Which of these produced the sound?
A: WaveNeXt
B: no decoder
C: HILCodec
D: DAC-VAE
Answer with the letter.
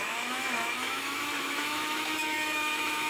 D